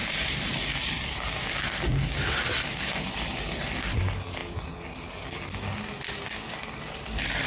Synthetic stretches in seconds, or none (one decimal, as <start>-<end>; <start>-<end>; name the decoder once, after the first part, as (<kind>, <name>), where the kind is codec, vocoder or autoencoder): 0.0-4.4 (vocoder, BigVGAN v2); 6.9-7.5

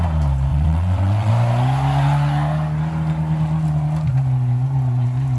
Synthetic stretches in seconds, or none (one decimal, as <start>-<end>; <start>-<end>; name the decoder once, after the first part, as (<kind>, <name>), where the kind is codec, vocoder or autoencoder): 0.5-1.3 (vocoder, WaveNeXt)

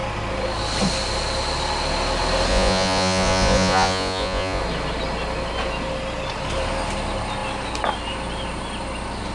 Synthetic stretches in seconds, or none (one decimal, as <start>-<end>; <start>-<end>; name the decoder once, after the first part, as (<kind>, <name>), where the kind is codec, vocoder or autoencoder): 2.5-4.6 (vocoder, Vocos)

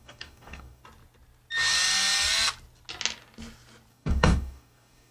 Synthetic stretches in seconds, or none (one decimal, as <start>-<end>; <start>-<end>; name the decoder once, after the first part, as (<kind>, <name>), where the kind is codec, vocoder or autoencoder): 0.0-0.8 (codec, DAC); 3.9-5.1

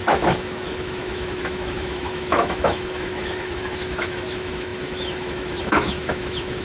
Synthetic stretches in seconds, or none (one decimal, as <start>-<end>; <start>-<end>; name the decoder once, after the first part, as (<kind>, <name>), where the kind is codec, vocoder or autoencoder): 0.0-6.6 (autoencoder, DAC-VAE)

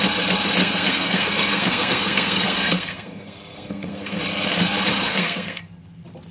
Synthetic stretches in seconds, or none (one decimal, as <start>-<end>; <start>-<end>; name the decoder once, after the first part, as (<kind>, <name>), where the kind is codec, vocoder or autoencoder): 0.6-4.2 (codec, SNAC); 5.1-5.6

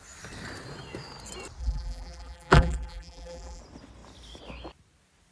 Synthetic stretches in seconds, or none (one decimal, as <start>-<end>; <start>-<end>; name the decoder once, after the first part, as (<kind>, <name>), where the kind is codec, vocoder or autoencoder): 1.6-3.6 (vocoder, BigVGAN v2)